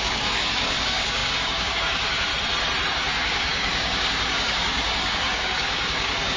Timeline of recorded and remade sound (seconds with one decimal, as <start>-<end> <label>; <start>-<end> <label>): 0.0-2.3 remade; 2.3-2.9 recorded; 2.9-6.4 remade